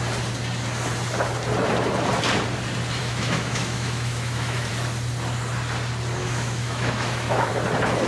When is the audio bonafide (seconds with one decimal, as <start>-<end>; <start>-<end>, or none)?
0.0-3.0; 4.7-6.2; 7.5-8.1